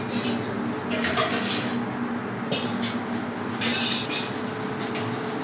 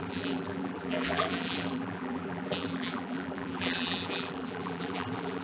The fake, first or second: second